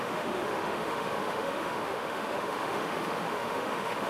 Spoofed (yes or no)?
yes